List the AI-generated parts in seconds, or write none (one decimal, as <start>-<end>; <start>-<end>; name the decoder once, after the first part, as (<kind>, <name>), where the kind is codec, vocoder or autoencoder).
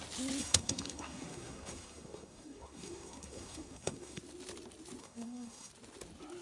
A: 0.4-4.2 (codec, SNAC); 5.0-5.7